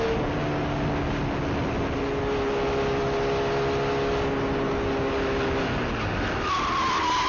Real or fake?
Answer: real